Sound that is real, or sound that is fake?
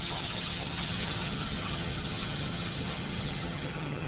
fake